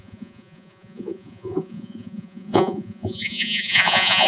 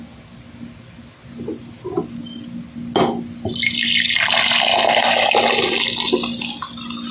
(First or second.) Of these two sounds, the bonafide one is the second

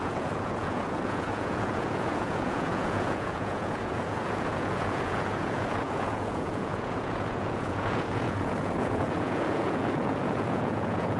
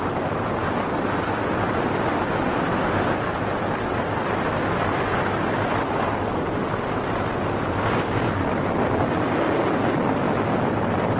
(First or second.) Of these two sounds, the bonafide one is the second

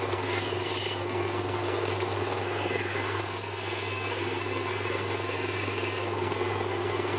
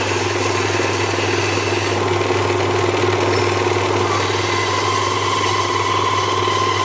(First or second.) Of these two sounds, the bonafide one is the second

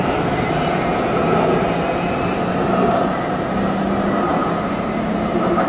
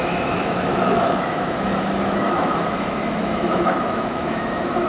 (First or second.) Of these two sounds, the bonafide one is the first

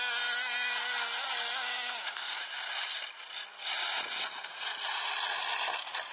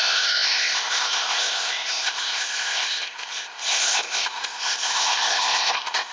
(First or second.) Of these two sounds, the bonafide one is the first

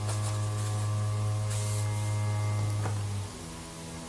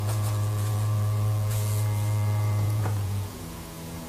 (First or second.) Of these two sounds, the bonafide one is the first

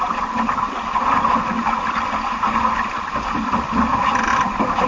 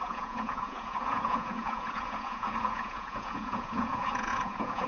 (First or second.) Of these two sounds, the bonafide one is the first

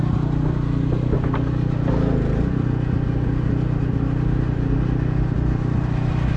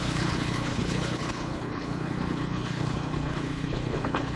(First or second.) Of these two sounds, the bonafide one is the first